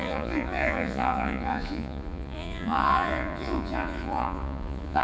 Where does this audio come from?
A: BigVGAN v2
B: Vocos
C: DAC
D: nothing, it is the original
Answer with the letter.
B